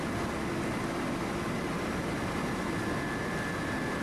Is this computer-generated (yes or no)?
no